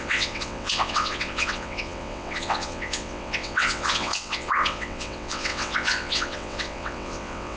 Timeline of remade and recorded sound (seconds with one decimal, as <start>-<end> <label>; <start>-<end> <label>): 0.0-7.6 remade

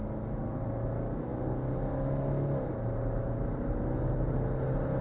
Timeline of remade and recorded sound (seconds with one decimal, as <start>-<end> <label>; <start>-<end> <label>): 0.0-5.0 recorded

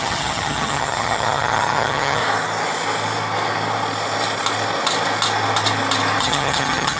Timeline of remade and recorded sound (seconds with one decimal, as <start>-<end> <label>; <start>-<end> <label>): 0.0-2.2 remade; 2.2-6.2 recorded; 6.2-7.0 remade